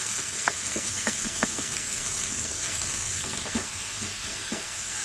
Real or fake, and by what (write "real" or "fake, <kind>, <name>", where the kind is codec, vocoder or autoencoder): fake, codec, SNAC